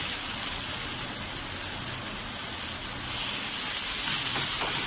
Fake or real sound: real